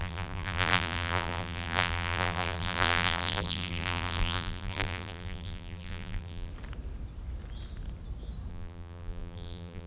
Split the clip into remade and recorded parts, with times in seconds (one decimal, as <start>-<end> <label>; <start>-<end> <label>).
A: 0.0-6.5 remade; 6.5-8.5 recorded; 8.5-9.9 remade